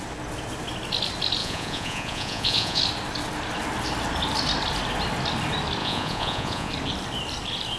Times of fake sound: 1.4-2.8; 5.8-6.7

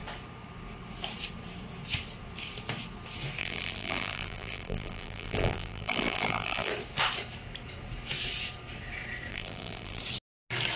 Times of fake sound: 3.4-6.7; 9.3-10.0

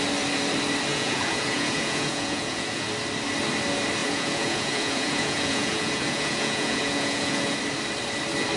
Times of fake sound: 0.9-2.9; 4.0-7.6

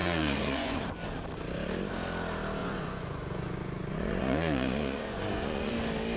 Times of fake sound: 0.0-0.8; 2.6-5.7

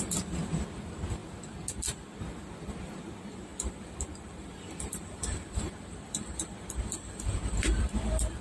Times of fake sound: 3.5-8.4

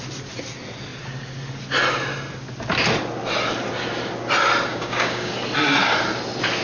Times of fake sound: 4.7-5.3

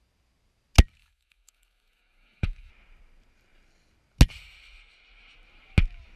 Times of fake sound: 1.0-2.7

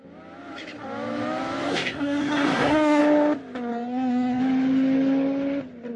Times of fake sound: 1.7-3.0; 3.7-4.4